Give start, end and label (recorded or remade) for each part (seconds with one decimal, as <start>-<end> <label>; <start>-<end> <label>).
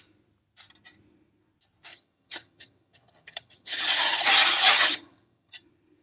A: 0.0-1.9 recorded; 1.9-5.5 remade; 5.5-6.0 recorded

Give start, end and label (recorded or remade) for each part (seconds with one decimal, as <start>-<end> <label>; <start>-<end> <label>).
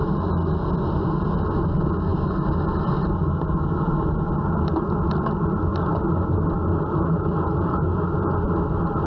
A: 0.0-9.1 recorded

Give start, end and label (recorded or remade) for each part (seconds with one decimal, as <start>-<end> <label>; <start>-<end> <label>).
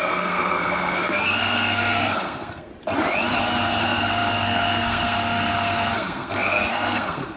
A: 0.0-2.7 remade; 2.7-3.8 recorded; 3.8-7.4 remade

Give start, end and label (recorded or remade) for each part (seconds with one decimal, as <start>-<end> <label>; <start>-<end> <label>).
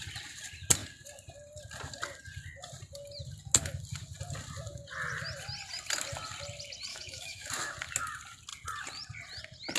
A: 0.0-6.9 recorded; 6.9-7.5 remade; 7.5-9.8 recorded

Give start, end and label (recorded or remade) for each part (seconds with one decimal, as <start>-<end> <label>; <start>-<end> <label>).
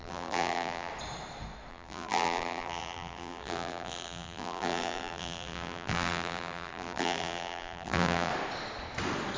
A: 0.0-0.9 remade; 0.9-1.7 recorded; 1.7-8.3 remade; 8.3-9.4 recorded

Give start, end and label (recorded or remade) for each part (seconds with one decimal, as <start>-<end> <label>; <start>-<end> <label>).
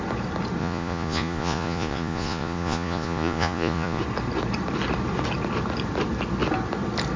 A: 0.0-0.6 recorded; 0.6-4.0 remade; 4.0-7.2 recorded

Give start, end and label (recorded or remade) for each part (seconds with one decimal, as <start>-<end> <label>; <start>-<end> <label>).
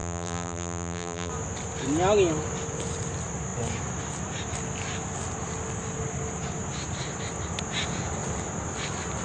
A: 0.0-1.3 remade; 1.3-9.2 recorded